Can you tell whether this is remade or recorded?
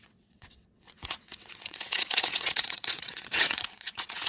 remade